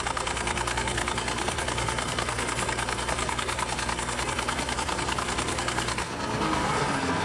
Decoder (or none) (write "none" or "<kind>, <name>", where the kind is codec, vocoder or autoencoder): codec, SNAC